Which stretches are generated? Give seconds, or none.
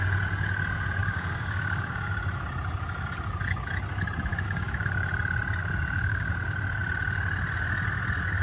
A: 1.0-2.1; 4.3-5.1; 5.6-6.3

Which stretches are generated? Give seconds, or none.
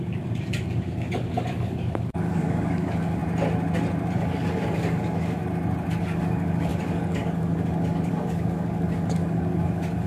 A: 0.0-3.2; 4.1-5.4; 6.0-10.1